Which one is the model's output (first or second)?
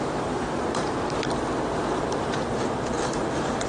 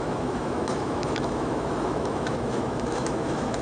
second